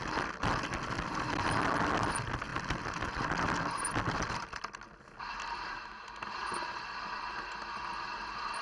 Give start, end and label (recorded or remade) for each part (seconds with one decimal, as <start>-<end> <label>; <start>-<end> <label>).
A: 0.0-8.6 recorded